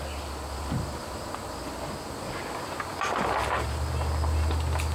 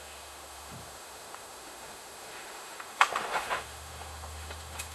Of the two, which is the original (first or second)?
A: first